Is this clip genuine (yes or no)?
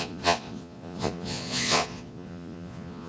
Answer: no